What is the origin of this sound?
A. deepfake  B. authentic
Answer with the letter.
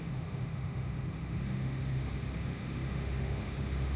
A